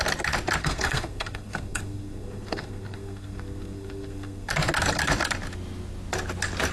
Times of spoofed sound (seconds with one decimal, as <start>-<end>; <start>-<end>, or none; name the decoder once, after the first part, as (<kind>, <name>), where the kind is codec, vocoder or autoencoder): 0.6-4.5 (codec, SNAC)